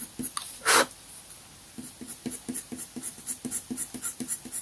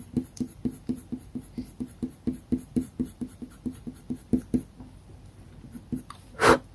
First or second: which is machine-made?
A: second